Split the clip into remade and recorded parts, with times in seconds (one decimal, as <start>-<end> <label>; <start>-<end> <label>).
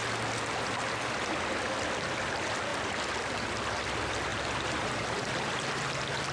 0.0-4.3 recorded; 4.3-5.8 remade; 5.8-6.3 recorded